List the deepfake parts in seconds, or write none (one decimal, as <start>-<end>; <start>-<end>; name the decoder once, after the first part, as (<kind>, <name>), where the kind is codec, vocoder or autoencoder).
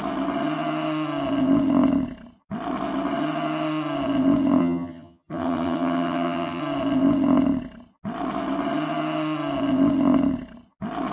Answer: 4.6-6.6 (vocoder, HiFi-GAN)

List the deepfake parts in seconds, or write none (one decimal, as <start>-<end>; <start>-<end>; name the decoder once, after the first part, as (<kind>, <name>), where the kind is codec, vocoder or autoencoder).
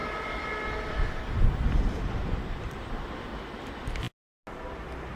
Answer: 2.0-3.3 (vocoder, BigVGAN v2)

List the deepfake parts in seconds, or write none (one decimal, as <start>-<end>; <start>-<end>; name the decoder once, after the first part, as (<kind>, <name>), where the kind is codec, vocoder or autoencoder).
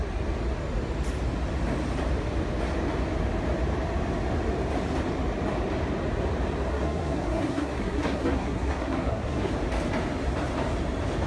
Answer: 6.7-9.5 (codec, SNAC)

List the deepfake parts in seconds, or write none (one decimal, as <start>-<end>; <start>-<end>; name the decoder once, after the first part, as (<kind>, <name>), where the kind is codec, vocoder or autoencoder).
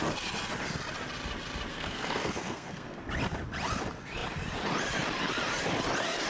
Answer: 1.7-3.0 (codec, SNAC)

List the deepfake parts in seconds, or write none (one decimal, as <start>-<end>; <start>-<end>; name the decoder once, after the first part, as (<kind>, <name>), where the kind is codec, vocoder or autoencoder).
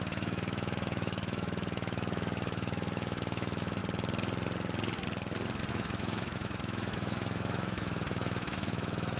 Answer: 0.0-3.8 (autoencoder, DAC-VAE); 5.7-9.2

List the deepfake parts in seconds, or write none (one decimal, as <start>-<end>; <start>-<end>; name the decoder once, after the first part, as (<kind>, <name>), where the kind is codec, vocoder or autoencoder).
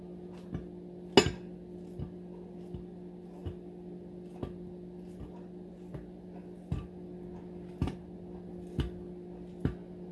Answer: none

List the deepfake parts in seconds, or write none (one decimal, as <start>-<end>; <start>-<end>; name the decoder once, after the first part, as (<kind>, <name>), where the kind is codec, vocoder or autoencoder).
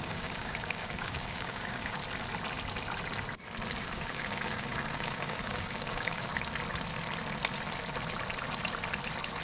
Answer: 0.0-2.0 (codec, DAC); 3.8-6.3